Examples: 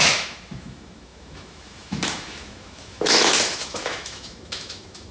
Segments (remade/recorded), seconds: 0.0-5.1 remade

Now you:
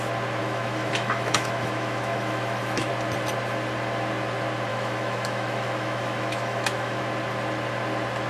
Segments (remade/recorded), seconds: 0.0-0.4 recorded; 0.4-2.9 remade; 2.9-4.7 recorded; 4.7-7.0 remade; 7.0-8.3 recorded

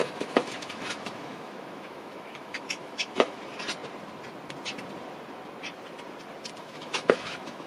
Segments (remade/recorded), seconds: 0.0-3.4 remade; 3.4-6.6 recorded; 6.6-7.7 remade

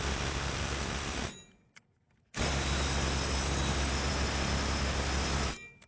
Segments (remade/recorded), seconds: 0.0-5.9 recorded

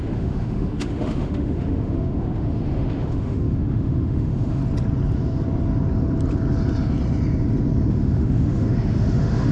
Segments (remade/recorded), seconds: 0.0-4.6 remade; 4.6-7.9 recorded; 7.9-9.5 remade

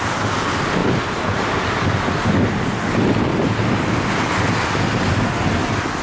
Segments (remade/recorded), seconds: 0.0-6.0 recorded